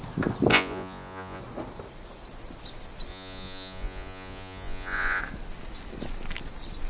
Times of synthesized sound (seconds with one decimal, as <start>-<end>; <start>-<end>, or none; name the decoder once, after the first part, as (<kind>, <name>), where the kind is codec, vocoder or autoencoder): 0.5-1.4 (vocoder, Vocos); 3.1-5.2